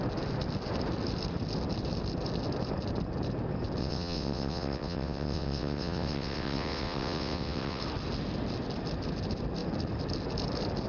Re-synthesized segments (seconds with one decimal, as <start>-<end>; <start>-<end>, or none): 3.8-7.8